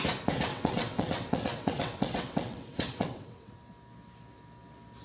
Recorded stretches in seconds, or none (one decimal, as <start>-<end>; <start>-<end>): 0.0-0.5; 3.5-5.0